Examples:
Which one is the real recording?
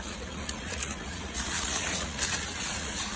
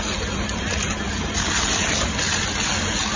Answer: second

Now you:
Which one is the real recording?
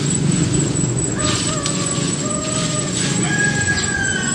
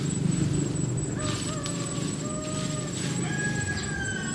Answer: second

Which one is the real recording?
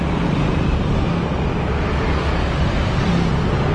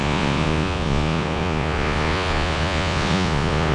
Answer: first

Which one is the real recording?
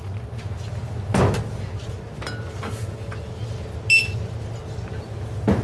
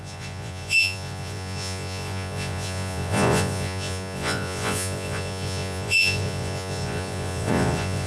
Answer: first